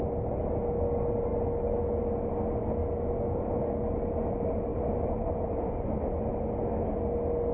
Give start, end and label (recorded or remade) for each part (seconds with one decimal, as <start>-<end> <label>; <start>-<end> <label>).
0.0-4.7 recorded; 4.7-5.7 remade; 5.7-7.5 recorded